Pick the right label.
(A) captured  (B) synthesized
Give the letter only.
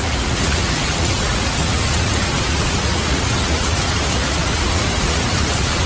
B